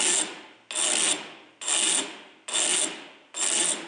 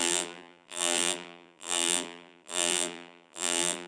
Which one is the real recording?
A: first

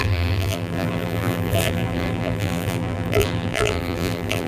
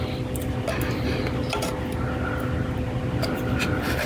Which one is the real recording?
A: second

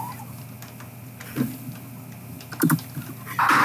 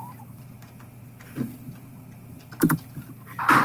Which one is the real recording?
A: first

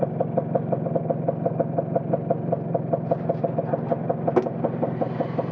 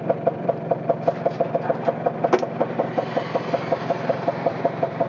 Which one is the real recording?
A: first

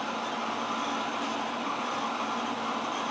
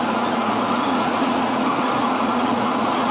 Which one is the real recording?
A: first